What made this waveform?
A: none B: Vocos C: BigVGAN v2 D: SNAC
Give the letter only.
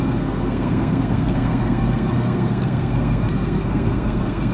D